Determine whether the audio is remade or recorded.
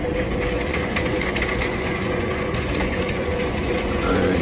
remade